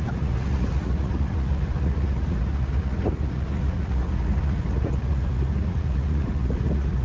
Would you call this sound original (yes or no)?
no